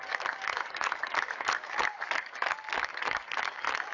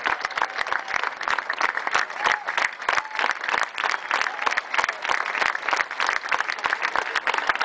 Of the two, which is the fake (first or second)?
first